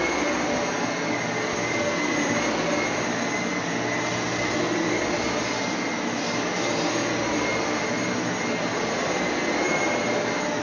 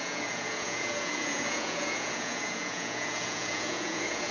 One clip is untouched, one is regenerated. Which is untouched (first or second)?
first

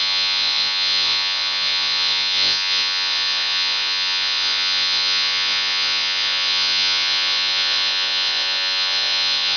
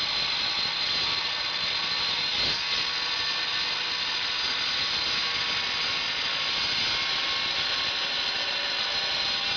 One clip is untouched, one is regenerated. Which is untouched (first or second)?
second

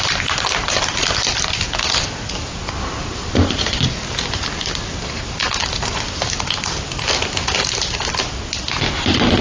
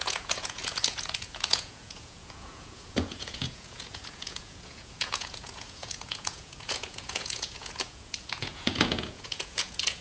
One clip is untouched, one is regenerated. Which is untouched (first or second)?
first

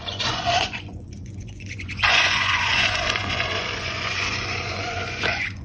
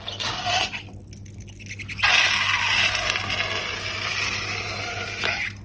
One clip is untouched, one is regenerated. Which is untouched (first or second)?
second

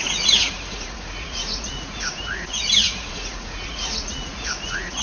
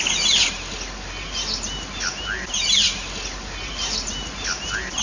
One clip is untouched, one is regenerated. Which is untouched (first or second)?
second